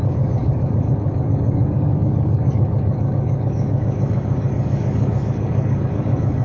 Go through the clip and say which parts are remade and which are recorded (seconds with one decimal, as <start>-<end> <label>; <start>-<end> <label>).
0.0-6.4 remade